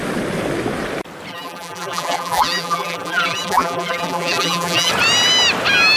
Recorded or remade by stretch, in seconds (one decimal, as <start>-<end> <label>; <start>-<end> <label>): 0.0-1.3 recorded; 1.3-4.9 remade; 4.9-6.0 recorded